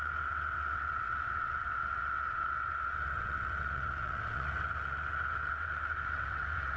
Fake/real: fake